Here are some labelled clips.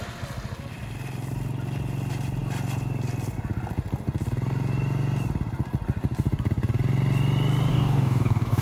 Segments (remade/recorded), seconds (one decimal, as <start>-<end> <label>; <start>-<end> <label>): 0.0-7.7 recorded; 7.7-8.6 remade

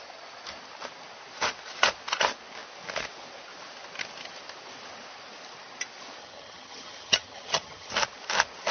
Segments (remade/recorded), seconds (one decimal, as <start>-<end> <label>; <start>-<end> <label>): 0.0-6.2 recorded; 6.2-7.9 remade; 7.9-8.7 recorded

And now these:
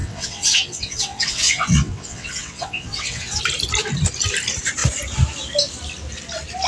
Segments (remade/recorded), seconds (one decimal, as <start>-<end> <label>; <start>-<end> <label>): 0.0-3.4 remade; 3.4-6.7 recorded

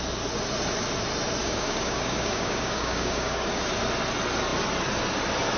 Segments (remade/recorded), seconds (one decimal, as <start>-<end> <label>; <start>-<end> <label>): 0.0-1.4 recorded; 1.4-3.6 remade; 3.6-5.6 recorded

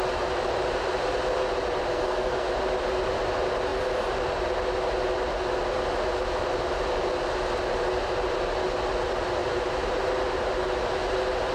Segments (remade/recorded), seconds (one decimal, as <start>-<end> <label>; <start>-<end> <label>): 0.0-1.9 recorded; 1.9-2.5 remade; 2.5-11.5 recorded

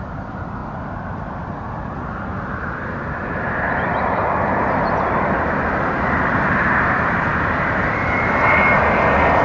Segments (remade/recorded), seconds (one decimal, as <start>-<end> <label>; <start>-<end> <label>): 0.0-9.4 recorded

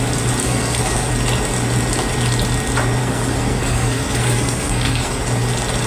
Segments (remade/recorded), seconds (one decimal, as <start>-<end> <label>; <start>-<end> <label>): 0.0-0.4 recorded; 0.4-1.1 remade; 1.1-3.0 recorded; 3.0-5.2 remade; 5.2-5.9 recorded